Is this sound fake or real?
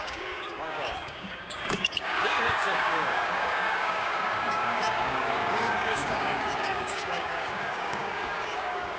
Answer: fake